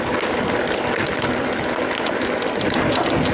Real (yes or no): yes